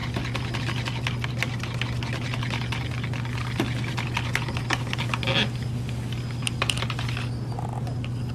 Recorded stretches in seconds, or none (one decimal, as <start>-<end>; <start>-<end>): 0.0-8.3